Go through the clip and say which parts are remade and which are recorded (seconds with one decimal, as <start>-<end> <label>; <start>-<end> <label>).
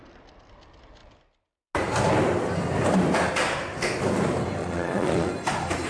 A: 0.0-4.6 recorded; 4.6-5.3 remade; 5.3-5.9 recorded